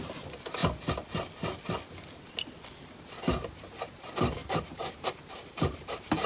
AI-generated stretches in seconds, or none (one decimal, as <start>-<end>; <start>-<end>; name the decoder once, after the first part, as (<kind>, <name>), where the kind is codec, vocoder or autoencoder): 0.0-0.6 (vocoder, BigVGAN v2); 3.3-6.3